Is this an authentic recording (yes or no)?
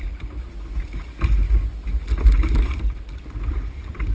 yes